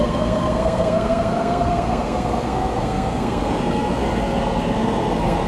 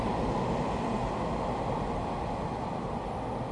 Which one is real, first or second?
second